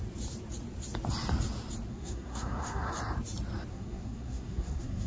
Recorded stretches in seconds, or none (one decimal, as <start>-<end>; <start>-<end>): 0.0-1.9; 2.9-3.7